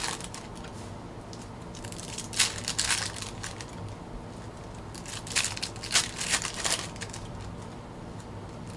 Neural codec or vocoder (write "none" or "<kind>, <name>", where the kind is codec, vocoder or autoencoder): none